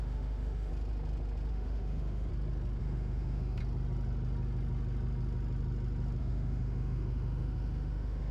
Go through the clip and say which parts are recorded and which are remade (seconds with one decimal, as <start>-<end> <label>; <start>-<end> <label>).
0.0-0.7 remade; 0.7-1.5 recorded; 1.5-2.3 remade; 2.3-2.8 recorded; 2.8-3.6 remade; 3.6-6.2 recorded; 6.2-8.3 remade